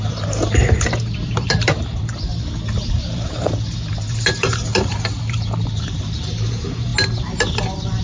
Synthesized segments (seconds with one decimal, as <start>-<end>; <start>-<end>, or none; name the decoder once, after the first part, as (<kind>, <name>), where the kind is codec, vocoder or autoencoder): 0.0-2.3 (vocoder, BigVGAN v2); 2.9-6.9